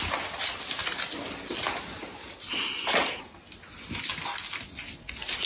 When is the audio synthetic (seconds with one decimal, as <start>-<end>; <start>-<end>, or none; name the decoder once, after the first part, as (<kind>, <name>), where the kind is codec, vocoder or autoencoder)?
none